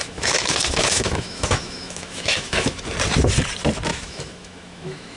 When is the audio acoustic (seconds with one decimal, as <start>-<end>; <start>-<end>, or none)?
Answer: 2.8-3.9